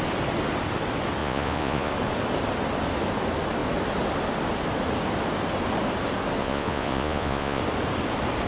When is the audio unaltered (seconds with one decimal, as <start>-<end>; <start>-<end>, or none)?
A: 0.0-1.2; 1.9-6.4; 7.6-8.5